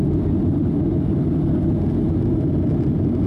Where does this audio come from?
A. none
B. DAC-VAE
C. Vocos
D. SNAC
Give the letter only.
A